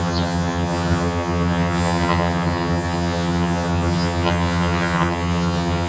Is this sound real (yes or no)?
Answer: no